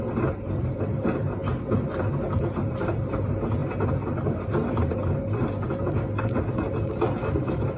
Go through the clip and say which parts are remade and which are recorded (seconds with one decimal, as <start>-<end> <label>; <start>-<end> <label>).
0.0-7.8 recorded